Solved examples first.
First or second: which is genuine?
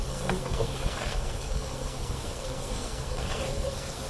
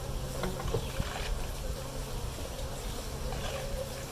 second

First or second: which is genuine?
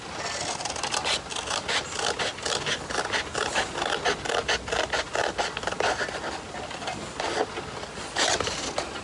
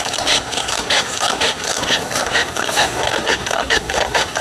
first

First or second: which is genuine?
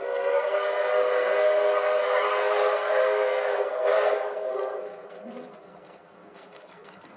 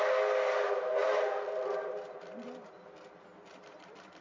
second